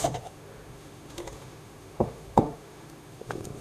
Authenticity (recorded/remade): remade